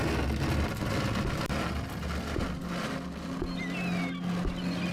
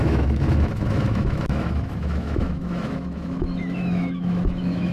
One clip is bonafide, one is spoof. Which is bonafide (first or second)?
first